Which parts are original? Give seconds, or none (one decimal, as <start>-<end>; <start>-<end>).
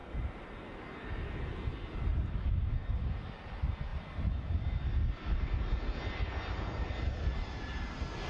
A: 0.0-8.3